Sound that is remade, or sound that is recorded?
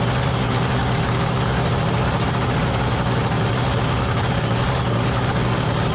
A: recorded